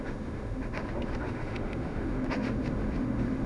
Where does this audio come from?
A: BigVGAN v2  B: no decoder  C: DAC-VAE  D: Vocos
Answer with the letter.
C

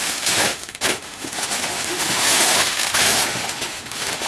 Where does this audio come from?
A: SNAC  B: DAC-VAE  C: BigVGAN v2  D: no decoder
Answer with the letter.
B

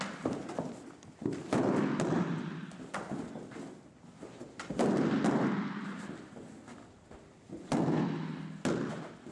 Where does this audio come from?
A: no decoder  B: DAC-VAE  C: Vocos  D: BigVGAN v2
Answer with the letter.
A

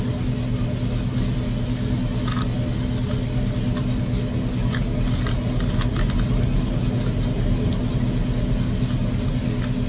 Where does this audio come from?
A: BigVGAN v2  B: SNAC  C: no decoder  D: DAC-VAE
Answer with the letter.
C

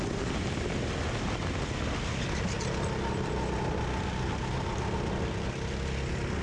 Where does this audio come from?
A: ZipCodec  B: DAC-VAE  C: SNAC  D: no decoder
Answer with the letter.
D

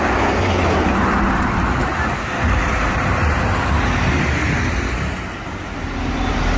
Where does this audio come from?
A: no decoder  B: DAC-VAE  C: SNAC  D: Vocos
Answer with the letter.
A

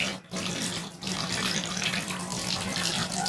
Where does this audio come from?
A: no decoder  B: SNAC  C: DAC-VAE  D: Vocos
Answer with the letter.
A